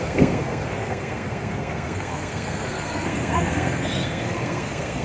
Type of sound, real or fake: fake